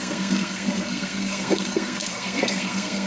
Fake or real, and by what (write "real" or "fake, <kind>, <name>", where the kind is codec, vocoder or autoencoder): fake, codec, SNAC